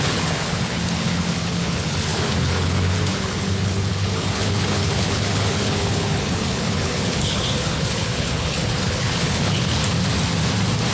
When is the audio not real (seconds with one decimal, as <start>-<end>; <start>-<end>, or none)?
0.0-9.8